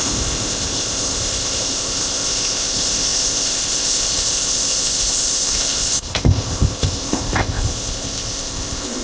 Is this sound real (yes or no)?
no